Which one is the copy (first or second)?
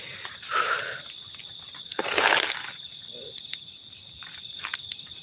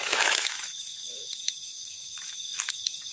second